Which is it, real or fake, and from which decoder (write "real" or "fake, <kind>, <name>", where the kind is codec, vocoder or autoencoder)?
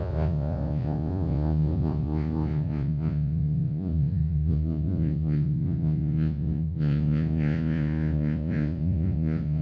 fake, vocoder, Vocos